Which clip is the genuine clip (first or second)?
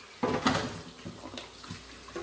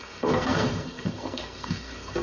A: first